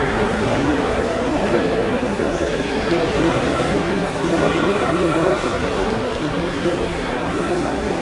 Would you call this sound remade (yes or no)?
yes